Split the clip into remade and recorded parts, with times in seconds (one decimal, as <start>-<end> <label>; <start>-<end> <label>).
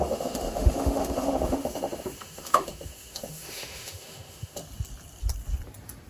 0.0-4.6 remade; 4.6-6.1 recorded